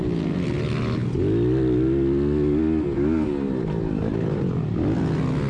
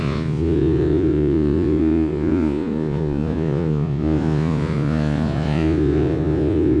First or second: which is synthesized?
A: second